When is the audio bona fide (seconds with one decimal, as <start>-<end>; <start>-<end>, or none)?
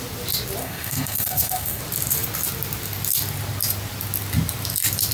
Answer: 0.0-0.6; 1.8-5.1